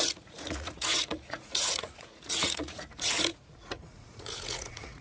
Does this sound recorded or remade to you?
remade